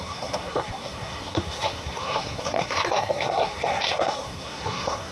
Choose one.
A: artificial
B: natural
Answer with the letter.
A